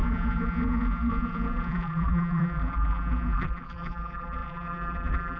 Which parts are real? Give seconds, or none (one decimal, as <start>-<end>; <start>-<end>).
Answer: none